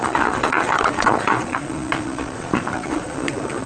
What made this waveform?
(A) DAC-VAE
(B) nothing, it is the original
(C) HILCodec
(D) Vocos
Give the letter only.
D